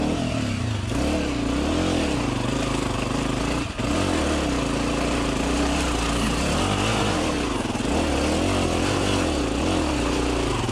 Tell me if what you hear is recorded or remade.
recorded